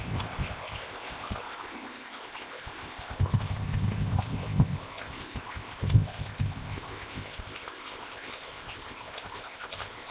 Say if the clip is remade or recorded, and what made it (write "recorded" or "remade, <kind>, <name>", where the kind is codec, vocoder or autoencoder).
remade, codec, ZipCodec